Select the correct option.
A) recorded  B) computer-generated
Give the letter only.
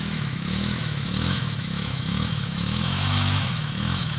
B